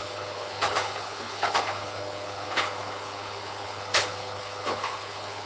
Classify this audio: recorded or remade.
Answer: remade